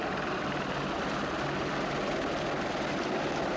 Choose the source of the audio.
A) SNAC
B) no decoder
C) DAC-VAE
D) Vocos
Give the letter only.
B